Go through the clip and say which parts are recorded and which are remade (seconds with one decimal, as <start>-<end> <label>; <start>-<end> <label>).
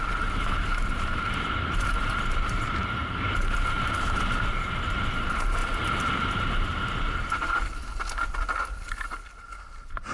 0.0-5.6 remade; 5.6-6.5 recorded; 6.5-7.5 remade; 7.5-10.1 recorded